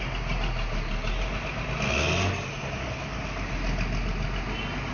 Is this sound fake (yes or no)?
no